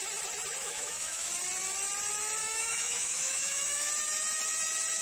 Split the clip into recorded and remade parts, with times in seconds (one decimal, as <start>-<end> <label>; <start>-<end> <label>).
0.0-0.6 recorded; 0.6-1.3 remade; 1.3-2.4 recorded; 2.4-3.9 remade; 3.9-5.0 recorded